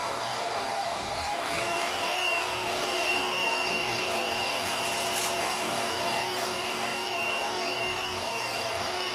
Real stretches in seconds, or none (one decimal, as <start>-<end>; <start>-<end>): 4.8-5.4

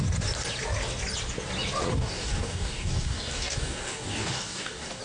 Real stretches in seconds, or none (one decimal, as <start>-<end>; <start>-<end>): 0.0-1.9

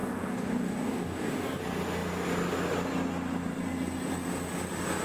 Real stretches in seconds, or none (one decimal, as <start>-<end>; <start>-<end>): 1.6-5.0